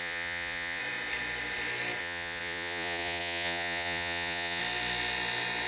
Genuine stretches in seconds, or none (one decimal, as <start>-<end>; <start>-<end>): 0.8-2.0; 4.6-5.7